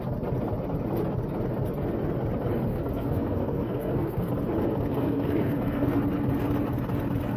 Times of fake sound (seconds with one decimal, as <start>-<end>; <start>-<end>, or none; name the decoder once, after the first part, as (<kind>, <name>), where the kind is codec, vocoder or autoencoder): 2.7-4.3 (codec, SNAC); 4.9-6.0